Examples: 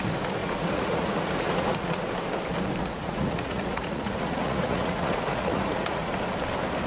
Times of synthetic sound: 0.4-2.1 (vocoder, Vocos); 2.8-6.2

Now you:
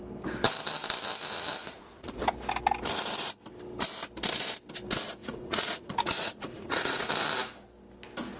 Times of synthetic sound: 1.6-2.2 (vocoder, Vocos); 5.2-7.1

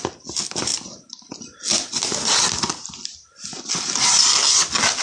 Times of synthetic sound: none

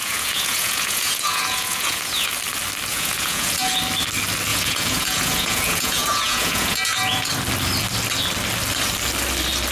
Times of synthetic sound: 0.0-2.3 (vocoder, Vocos); 2.9-3.8; 4.5-7.3

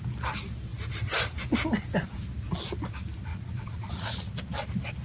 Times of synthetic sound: 3.3-4.3 (vocoder, Vocos)

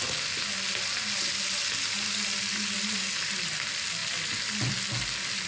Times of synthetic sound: none

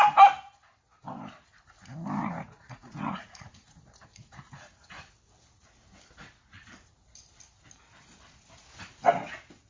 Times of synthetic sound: 2.2-5.0 (vocoder, Vocos)